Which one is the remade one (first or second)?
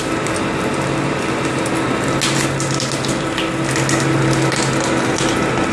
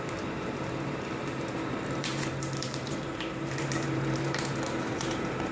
second